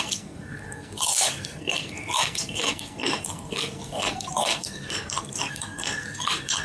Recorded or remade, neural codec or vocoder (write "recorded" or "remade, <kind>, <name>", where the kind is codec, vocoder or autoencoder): remade, codec, SNAC